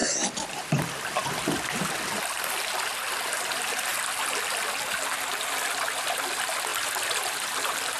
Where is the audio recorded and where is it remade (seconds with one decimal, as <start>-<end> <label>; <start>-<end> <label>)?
0.0-6.7 recorded; 6.7-8.0 remade